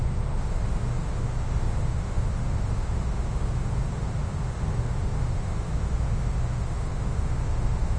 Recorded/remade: remade